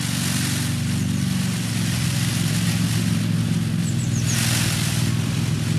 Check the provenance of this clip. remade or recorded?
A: recorded